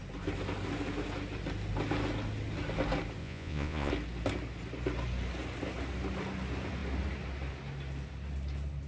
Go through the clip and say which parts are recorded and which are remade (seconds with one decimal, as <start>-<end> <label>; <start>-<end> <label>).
0.0-3.2 recorded; 3.2-3.9 remade; 3.9-8.9 recorded